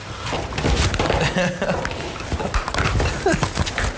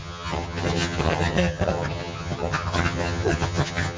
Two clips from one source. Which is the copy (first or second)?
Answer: second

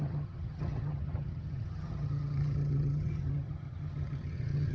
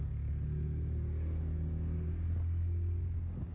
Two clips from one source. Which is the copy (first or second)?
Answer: first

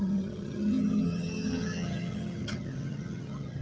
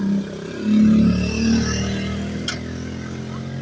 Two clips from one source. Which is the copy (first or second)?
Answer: first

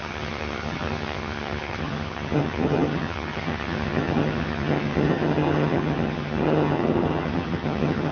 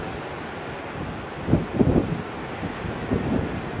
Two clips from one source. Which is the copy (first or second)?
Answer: first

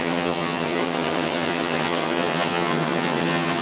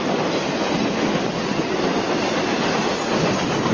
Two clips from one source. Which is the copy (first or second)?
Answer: first